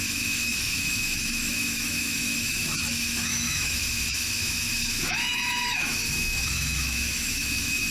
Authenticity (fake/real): fake